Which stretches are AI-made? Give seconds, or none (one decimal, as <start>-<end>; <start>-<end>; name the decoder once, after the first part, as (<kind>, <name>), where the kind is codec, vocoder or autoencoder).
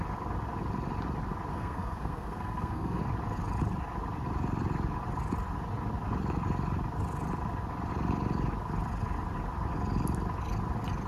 1.5-3.0 (codec, SNAC)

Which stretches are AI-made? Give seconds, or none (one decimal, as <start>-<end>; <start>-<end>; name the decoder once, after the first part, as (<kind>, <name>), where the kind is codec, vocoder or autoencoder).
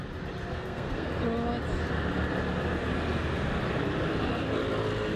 0.5-1.1 (codec, SNAC)